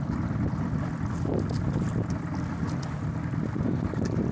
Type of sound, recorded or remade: recorded